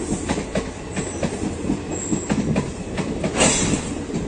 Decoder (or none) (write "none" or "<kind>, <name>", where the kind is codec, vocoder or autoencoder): none